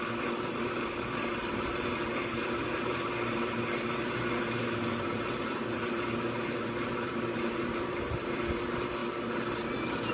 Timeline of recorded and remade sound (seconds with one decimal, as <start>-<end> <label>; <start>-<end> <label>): 0.0-9.0 remade; 9.0-10.1 recorded